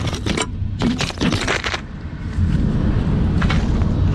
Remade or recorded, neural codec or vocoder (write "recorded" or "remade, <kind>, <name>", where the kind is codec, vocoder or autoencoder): remade, vocoder, BigVGAN v2